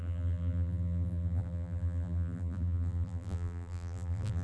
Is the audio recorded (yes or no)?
no